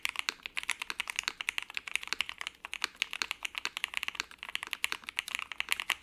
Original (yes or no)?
yes